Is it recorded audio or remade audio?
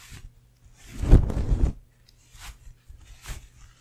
recorded